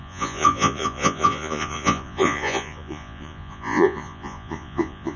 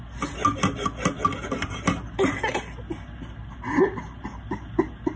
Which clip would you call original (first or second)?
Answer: second